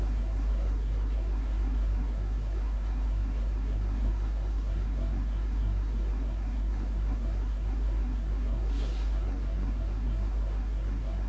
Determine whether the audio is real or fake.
fake